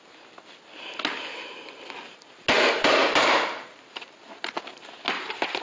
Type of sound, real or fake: real